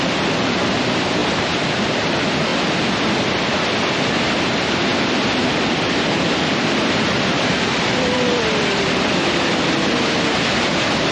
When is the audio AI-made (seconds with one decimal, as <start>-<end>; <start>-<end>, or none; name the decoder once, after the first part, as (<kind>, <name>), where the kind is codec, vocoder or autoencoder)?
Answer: 0.0-1.2 (vocoder, BigVGAN v2); 1.8-11.1

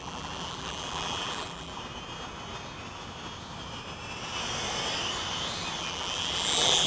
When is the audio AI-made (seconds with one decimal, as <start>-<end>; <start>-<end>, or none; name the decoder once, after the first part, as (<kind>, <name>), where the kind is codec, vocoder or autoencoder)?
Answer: 0.0-1.7 (vocoder, BigVGAN v2); 5.8-6.9

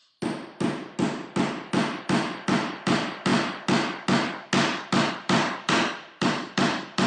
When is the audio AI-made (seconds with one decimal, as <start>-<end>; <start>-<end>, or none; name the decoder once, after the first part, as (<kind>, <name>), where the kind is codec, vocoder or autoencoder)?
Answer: 2.0-3.3 (vocoder, BigVGAN v2); 5.1-7.1

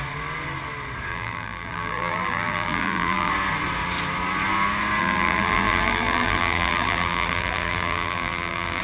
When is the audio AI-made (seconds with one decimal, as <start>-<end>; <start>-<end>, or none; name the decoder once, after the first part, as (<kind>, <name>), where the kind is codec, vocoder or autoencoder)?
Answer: 1.1-3.3 (vocoder, BigVGAN v2); 5.0-8.8

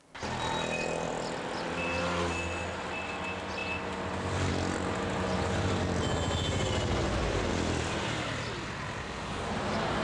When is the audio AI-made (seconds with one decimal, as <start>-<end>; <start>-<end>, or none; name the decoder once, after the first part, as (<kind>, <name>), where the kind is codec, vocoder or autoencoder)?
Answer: 7.0-7.5 (vocoder, BigVGAN v2)

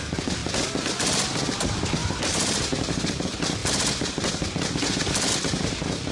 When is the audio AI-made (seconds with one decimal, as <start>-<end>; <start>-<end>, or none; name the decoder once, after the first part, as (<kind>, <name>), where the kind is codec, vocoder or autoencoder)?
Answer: 2.0-2.7 (vocoder, BigVGAN v2)

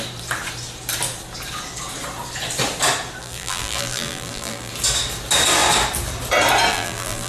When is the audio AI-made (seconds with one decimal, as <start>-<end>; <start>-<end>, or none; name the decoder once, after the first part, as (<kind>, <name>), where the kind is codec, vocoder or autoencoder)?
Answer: 3.2-4.7 (vocoder, BigVGAN v2); 6.7-7.3